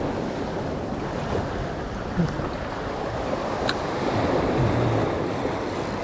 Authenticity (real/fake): real